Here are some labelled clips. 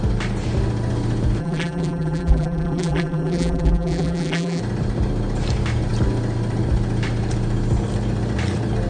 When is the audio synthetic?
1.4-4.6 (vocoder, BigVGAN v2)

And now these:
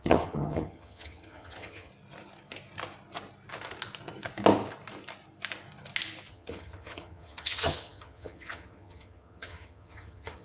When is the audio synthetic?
0.0-1.9 (vocoder, HiFi-GAN); 6.3-10.4

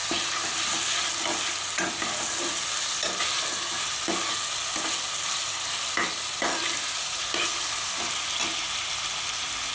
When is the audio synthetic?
none

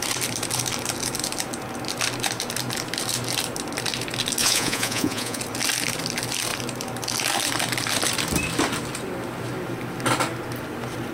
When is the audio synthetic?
4.4-5.4 (vocoder, Vocos)

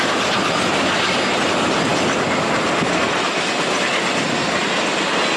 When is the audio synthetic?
none

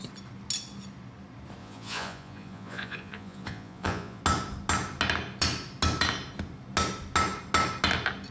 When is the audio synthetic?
1.6-4.2 (vocoder, Vocos)